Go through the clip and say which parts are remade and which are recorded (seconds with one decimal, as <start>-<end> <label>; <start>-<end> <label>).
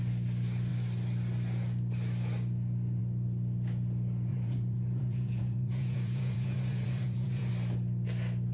0.0-4.3 recorded; 4.3-7.5 remade; 7.5-8.5 recorded